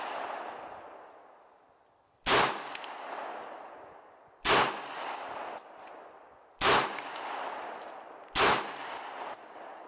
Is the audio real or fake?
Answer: real